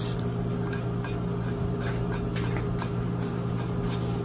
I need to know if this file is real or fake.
real